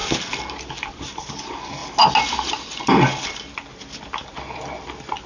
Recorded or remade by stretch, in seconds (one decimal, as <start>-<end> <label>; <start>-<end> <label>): 0.0-5.3 recorded